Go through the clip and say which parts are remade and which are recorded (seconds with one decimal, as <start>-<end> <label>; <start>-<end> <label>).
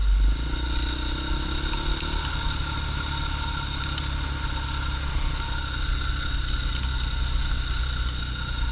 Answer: 0.0-8.7 recorded